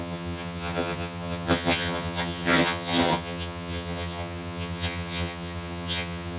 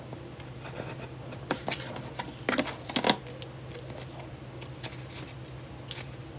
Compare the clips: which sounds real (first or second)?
second